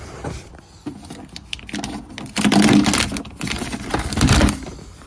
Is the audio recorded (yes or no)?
yes